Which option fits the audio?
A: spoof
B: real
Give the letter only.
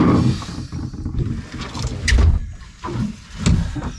B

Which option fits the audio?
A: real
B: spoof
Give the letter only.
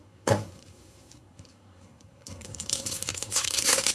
B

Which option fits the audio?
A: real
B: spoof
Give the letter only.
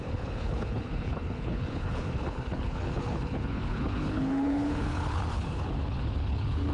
B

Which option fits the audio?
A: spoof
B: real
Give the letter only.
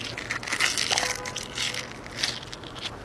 B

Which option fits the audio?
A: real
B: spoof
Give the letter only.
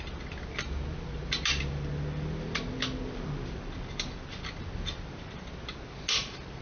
A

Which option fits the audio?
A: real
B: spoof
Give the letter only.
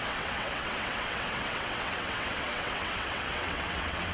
B